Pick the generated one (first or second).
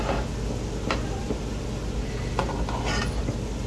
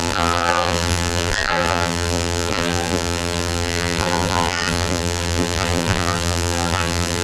second